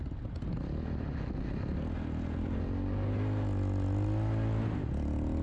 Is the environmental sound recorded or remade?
recorded